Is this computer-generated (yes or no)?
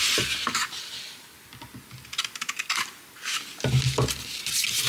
no